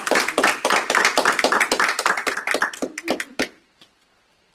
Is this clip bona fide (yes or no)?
yes